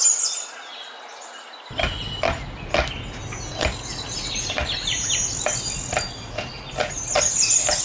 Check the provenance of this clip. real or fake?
real